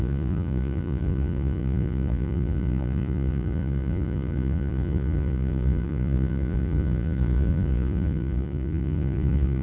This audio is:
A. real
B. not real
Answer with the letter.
B